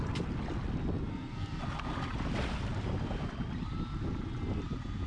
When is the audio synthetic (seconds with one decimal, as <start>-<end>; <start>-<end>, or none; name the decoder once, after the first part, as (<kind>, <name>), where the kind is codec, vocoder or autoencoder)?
1.1-1.6 (codec, SNAC)